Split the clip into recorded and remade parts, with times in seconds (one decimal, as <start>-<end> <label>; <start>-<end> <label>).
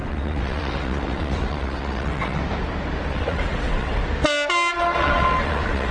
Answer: 0.0-2.4 remade; 2.4-3.1 recorded; 3.1-4.0 remade; 4.0-4.8 recorded; 4.8-5.9 remade